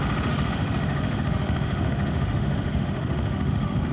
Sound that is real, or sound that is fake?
fake